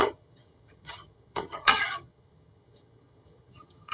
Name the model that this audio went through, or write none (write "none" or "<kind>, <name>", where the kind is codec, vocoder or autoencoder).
vocoder, HiFi-GAN